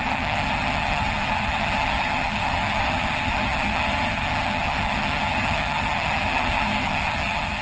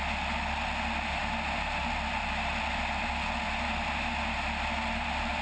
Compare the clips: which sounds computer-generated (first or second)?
first